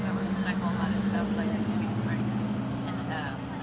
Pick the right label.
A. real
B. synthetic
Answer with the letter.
A